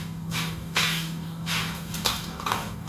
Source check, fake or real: fake